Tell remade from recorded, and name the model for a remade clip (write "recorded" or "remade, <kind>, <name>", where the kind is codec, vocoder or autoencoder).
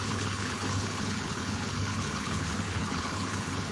remade, codec, HILCodec